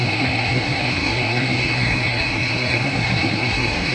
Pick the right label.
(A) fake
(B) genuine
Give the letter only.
A